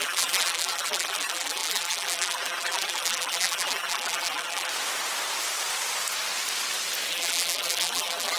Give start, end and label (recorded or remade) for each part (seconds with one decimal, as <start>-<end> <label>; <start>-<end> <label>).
0.0-4.7 remade; 4.7-7.1 recorded; 7.1-8.4 remade